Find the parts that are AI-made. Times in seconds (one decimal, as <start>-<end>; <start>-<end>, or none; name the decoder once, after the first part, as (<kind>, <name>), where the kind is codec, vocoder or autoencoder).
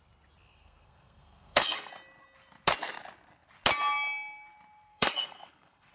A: 0.5-1.9 (codec, SNAC); 4.9-5.9